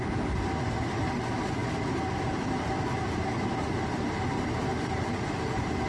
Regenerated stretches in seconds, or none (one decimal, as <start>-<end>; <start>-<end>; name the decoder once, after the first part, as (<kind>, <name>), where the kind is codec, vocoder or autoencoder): 1.6-5.1 (vocoder, BigVGAN v2)